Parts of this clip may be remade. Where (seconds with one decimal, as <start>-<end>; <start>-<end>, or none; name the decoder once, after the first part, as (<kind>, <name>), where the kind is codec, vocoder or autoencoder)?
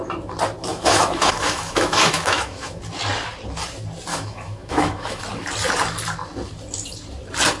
0.7-2.8 (autoencoder, DAC-VAE); 4.1-5.2